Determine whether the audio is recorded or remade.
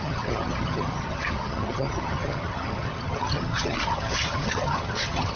remade